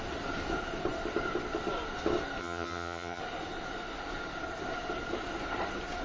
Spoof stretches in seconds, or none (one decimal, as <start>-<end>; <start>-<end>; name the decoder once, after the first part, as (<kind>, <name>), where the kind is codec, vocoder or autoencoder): 2.4-3.2 (vocoder, HiFi-GAN)